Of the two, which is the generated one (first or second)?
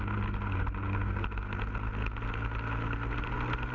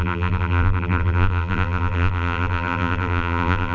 second